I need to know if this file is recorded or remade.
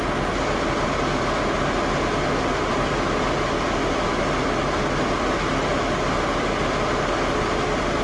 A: recorded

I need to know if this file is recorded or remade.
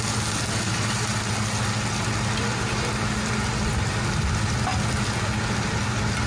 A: recorded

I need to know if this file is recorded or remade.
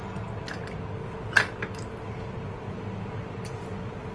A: recorded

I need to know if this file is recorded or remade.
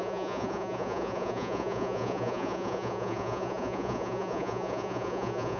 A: remade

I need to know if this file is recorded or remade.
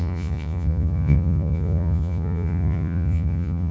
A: remade